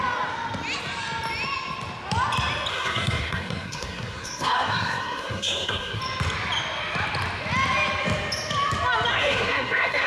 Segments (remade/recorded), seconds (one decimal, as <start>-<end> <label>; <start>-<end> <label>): 0.0-2.7 recorded; 2.7-6.0 remade; 6.0-9.1 recorded; 9.1-10.1 remade